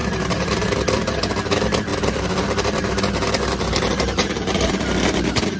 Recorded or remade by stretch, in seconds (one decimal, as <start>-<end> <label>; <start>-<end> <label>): 0.0-0.7 remade; 0.7-1.9 recorded; 1.9-5.6 remade